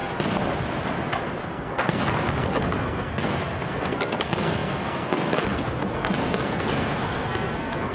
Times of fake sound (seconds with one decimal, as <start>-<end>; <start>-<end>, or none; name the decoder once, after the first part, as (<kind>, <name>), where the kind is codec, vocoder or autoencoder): 1.4-7.9 (codec, SNAC)